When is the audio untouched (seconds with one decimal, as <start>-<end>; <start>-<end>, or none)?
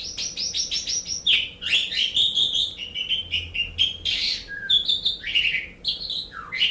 0.0-6.7